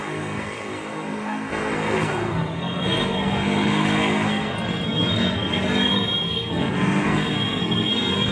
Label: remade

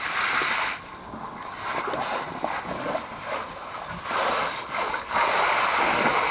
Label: recorded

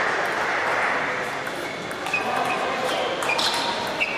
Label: recorded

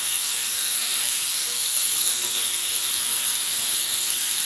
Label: remade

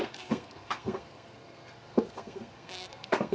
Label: remade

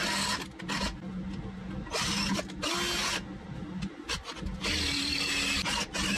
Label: recorded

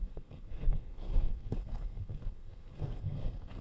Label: remade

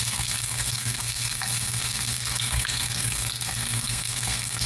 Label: remade